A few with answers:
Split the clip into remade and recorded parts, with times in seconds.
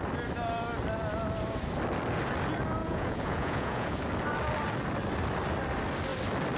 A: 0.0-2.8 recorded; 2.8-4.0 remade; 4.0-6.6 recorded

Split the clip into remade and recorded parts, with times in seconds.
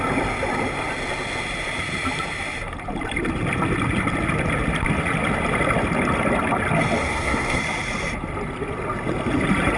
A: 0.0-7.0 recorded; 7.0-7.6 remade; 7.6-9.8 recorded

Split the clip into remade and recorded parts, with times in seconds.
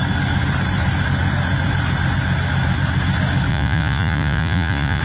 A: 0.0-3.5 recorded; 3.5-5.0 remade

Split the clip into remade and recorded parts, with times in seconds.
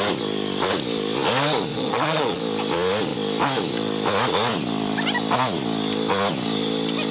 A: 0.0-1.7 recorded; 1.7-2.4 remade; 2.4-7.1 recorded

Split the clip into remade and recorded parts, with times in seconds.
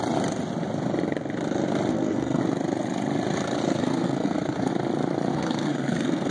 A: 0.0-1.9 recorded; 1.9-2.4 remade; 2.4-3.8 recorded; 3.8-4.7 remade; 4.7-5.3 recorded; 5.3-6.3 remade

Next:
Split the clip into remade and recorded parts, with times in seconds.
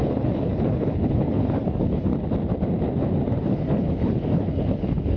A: 0.0-2.1 remade; 2.1-3.4 recorded; 3.4-5.2 remade